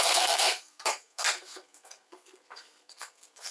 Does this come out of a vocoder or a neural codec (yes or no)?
yes